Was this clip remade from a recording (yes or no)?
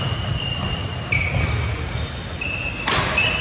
no